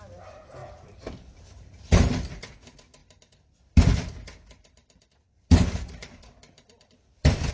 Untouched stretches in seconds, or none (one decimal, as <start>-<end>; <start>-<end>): 0.0-0.6; 1.8-3.0